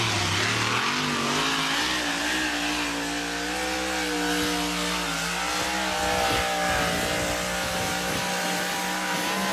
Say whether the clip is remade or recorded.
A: recorded